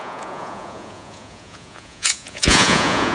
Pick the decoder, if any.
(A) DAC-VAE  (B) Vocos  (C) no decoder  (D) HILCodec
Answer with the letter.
B